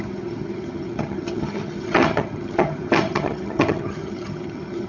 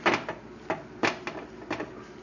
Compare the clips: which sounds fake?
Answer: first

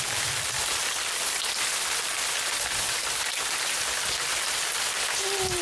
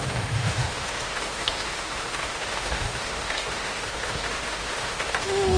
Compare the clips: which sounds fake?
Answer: second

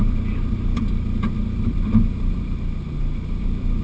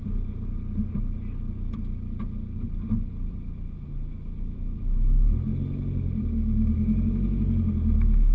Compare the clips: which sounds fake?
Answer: first